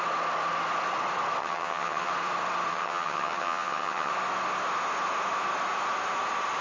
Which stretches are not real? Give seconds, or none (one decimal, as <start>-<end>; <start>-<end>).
1.4-2.1; 2.7-4.1